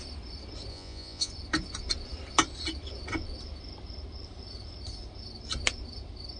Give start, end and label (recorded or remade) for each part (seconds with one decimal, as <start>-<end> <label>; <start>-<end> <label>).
0.0-0.7 recorded; 0.7-1.3 remade; 1.3-6.4 recorded